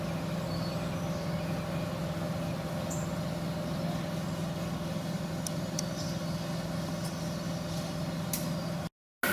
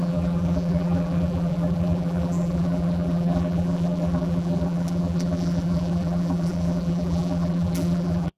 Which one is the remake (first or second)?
second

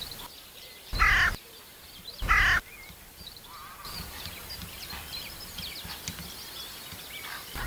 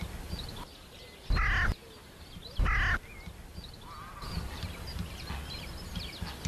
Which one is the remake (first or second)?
first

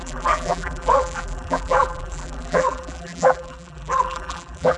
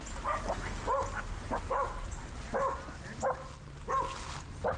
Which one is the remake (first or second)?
first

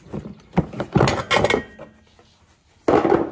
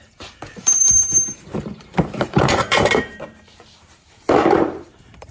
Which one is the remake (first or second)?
second